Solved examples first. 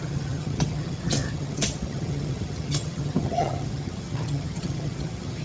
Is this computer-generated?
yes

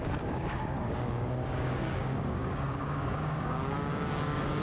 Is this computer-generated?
yes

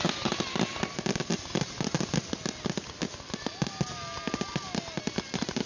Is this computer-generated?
no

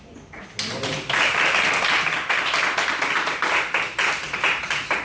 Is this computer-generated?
no